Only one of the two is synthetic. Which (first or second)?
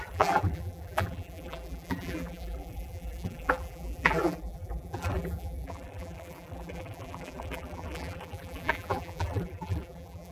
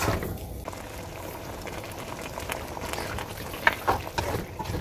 first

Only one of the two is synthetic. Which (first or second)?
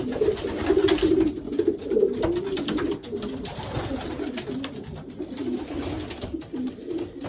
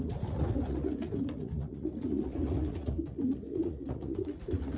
second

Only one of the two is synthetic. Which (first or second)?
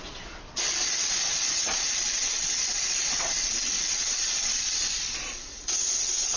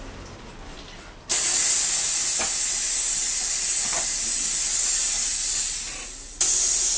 first